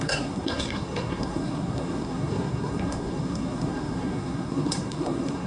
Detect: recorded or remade remade